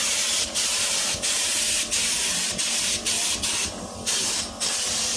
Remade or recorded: recorded